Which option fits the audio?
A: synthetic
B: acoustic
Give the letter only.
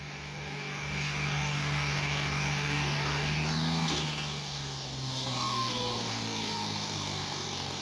A